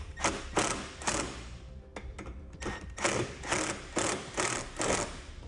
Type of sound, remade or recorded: recorded